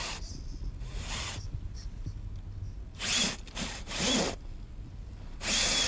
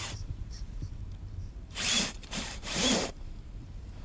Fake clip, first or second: second